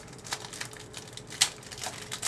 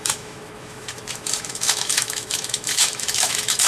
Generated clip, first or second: second